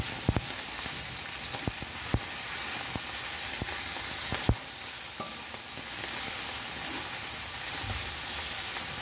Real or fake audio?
real